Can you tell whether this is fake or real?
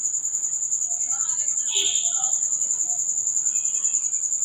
real